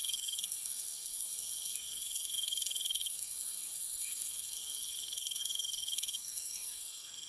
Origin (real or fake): fake